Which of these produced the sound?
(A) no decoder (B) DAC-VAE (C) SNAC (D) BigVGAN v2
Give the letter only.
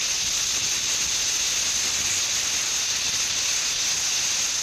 A